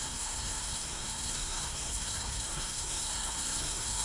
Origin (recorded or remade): remade